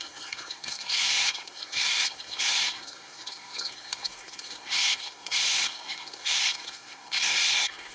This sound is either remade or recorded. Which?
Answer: remade